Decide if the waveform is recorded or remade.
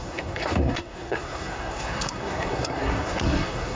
remade